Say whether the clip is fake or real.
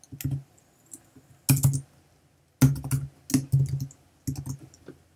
real